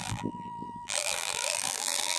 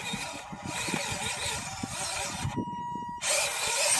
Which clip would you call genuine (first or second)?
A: second